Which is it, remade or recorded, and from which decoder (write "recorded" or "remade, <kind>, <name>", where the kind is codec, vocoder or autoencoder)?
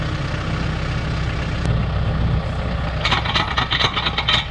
recorded